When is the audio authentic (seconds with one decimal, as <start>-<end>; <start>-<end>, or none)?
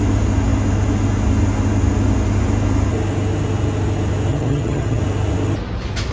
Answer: 0.0-4.3; 5.0-6.1